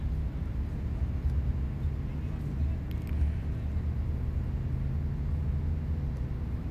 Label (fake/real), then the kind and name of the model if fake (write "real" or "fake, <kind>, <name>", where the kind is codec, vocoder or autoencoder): real